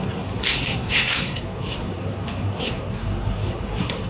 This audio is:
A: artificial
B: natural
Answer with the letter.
A